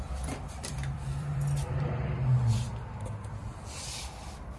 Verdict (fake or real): fake